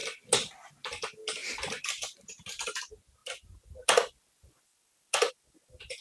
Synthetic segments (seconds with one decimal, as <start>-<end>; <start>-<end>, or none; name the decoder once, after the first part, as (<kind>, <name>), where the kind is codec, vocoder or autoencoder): 0.0-0.7 (vocoder, BigVGAN v2); 1.4-2.8; 3.2-5.3